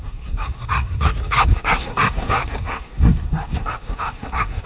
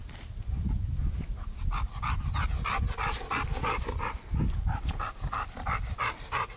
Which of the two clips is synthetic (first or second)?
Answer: first